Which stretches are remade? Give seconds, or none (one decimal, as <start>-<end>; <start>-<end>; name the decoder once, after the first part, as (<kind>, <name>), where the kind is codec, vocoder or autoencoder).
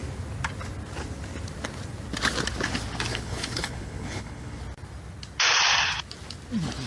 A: 3.1-4.6 (codec, HILCodec)